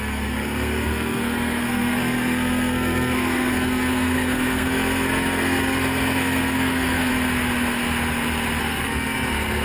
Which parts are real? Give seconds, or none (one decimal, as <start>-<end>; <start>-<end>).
7.1-8.6